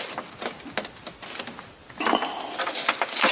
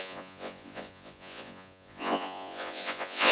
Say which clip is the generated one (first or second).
second